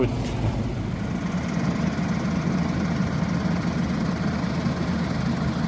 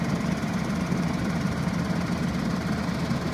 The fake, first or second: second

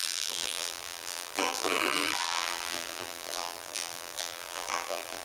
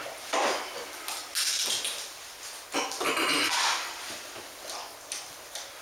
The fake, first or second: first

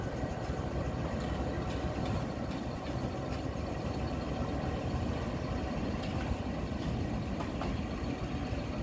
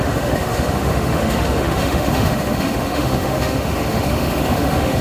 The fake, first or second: second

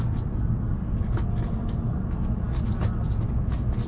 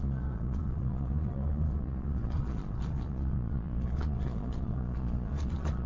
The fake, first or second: second